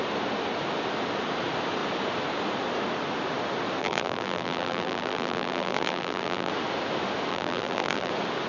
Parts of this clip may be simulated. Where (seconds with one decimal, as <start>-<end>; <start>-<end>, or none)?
3.8-6.5; 7.3-8.1